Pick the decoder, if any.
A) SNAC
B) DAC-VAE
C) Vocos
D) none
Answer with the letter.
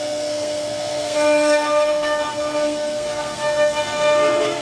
A